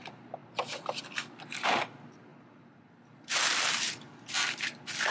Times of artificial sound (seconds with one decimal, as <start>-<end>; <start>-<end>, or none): 0.0-0.4; 1.3-5.1